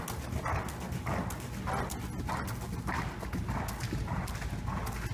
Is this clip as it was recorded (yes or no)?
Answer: yes